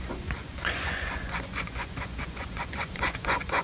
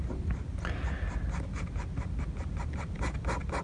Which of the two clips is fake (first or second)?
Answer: first